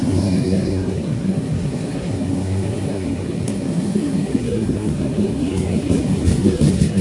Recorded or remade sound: remade